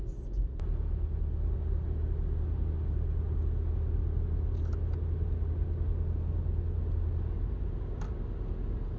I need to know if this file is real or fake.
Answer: real